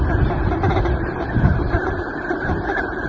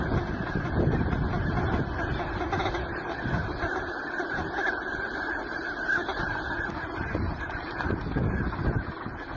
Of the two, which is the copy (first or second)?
first